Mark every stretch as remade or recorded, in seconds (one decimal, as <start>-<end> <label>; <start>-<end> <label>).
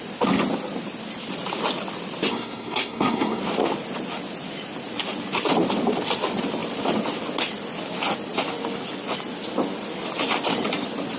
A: 0.0-2.3 recorded; 2.3-3.4 remade; 3.4-11.2 recorded